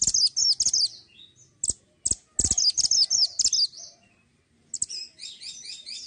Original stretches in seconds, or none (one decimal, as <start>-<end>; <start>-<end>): 0.0-6.1